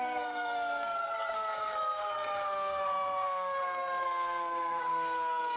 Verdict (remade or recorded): remade